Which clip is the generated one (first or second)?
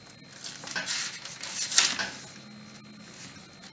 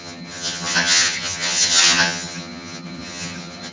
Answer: second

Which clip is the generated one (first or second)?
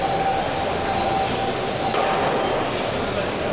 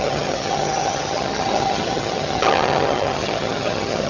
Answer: second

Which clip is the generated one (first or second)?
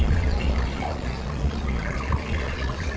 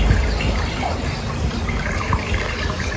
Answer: first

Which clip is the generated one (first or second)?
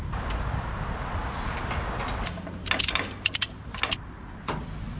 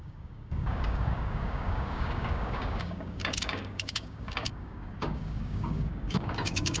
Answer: second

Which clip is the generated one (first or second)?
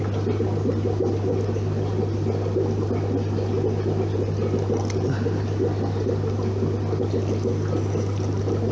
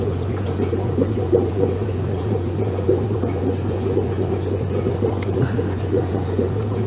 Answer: second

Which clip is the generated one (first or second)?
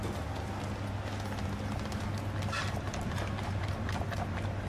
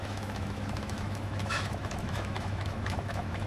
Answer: second